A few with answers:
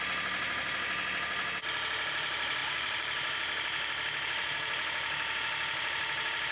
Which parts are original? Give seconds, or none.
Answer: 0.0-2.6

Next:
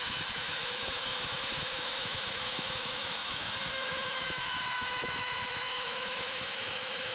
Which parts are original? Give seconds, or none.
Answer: none

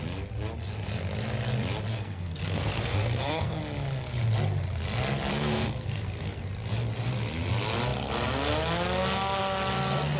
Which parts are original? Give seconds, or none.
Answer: 0.0-1.9; 3.6-5.3; 6.4-10.2

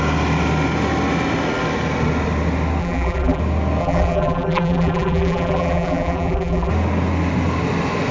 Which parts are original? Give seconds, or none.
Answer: 0.0-2.8; 3.4-3.8; 6.7-8.1

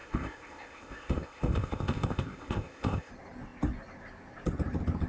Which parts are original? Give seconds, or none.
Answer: 3.1-5.1

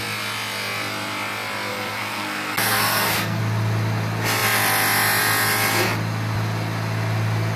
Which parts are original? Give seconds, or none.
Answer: 0.0-1.7; 3.4-7.6